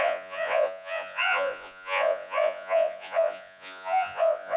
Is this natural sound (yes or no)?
no